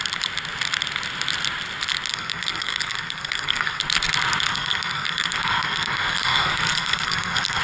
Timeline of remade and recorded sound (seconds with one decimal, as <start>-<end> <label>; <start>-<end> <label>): 0.0-2.1 recorded; 2.1-3.8 remade; 3.8-4.5 recorded; 4.5-7.6 remade